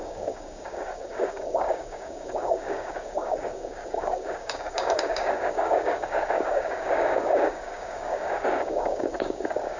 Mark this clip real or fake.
fake